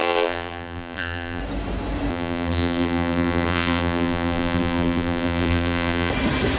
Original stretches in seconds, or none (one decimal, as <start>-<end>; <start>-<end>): 1.4-2.1; 6.1-6.6